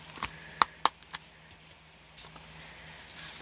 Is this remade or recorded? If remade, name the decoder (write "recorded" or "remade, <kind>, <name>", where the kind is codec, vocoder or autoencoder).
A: recorded